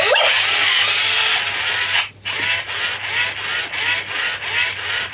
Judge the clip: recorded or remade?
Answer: recorded